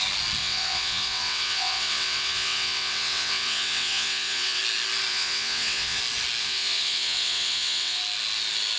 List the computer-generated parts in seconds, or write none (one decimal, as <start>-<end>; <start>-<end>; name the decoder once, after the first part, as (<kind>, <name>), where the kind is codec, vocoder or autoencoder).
0.4-4.6 (vocoder, WaveNeXt); 5.1-6.0; 6.4-8.0